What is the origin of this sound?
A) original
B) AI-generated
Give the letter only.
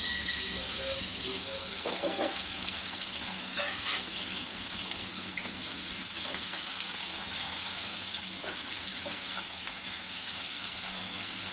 B